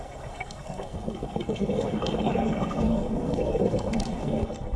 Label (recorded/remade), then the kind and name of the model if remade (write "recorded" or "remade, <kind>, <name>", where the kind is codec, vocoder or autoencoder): remade, codec, SNAC